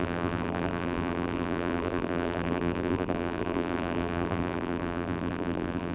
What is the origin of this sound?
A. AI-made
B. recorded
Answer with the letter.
A